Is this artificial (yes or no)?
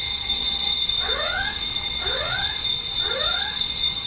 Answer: yes